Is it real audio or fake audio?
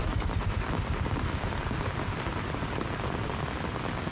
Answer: real